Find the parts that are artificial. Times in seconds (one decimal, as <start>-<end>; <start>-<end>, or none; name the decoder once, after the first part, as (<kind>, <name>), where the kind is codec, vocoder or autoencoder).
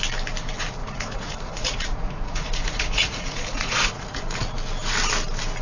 0.8-4.2 (vocoder, Vocos)